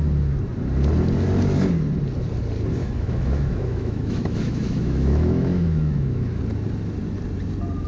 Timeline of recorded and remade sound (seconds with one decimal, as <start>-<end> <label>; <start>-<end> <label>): 0.0-2.8 recorded; 2.8-6.4 remade; 6.4-7.9 recorded